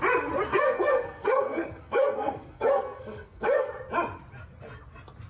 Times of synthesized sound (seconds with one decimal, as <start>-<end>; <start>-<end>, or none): 0.5-3.7